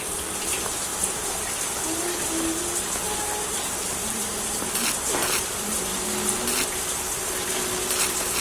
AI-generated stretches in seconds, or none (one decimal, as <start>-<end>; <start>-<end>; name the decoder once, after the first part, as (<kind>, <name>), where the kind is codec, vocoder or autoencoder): 3.5-4.3 (vocoder, BigVGAN v2)